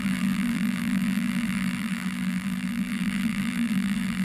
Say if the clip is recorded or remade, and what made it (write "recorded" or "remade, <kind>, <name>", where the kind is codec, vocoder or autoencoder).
remade, vocoder, BigVGAN v2